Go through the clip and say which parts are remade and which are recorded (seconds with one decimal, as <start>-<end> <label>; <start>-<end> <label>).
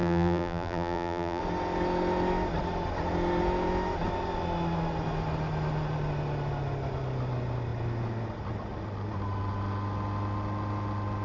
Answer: 0.0-1.4 remade; 1.4-11.2 recorded